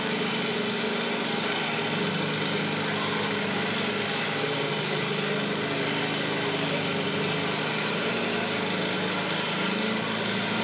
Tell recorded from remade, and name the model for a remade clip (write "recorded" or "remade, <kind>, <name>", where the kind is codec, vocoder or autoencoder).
recorded